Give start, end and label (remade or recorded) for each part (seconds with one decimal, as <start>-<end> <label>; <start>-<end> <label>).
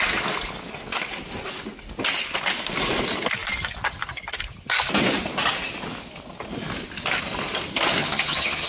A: 0.0-8.0 recorded; 8.0-8.7 remade